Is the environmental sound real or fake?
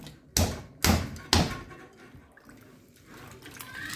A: real